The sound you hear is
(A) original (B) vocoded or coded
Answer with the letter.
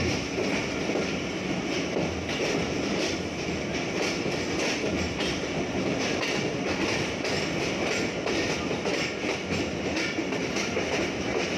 A